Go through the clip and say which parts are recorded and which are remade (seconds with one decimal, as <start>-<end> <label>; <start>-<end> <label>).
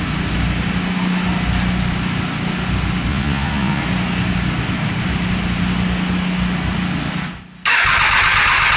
0.0-3.1 recorded; 3.1-3.8 remade; 3.8-8.8 recorded